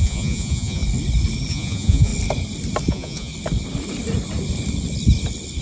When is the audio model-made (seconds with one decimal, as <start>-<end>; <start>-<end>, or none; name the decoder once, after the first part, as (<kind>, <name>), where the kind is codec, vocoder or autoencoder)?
0.0-0.8 (vocoder, Vocos); 1.5-2.1; 2.9-3.3